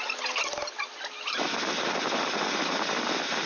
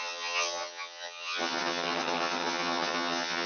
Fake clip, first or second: second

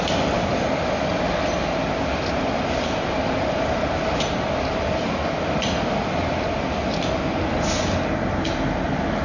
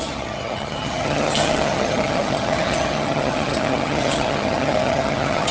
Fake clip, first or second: second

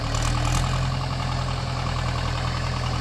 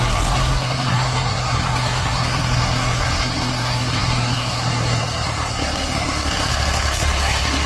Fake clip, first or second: second